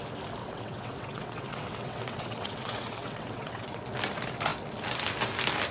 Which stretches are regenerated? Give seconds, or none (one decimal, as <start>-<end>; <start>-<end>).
0.4-3.8